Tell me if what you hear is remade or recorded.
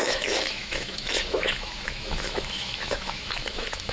remade